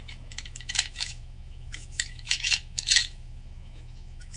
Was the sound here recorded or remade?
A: remade